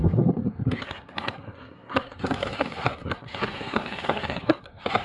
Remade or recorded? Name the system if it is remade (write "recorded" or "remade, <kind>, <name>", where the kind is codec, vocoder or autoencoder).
remade, codec, SNAC